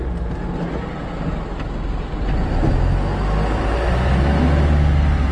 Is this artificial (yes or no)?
no